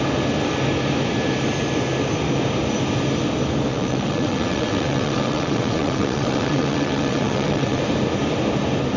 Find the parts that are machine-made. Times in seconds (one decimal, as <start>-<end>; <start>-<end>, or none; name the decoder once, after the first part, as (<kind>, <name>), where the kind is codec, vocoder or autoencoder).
3.7-7.8 (vocoder, WaveNeXt)